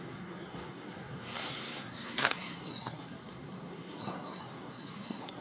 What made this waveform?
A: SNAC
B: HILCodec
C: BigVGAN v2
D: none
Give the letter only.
A